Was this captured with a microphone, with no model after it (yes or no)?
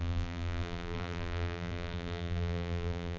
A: no